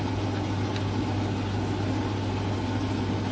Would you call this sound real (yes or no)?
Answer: yes